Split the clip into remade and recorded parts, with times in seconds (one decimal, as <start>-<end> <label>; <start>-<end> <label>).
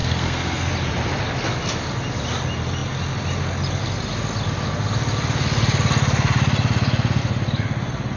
0.0-0.7 remade; 0.7-8.2 recorded